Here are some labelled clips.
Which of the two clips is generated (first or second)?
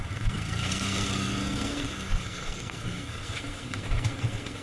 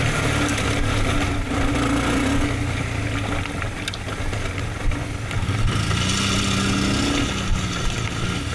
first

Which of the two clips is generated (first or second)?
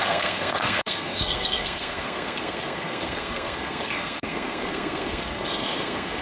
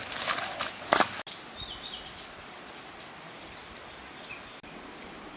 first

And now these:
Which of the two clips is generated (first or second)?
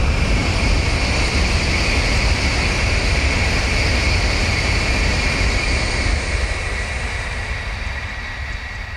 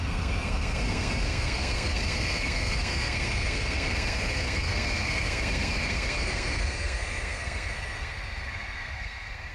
second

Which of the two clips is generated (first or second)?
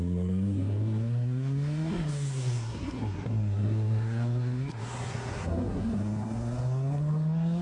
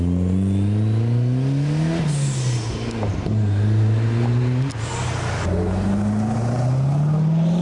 first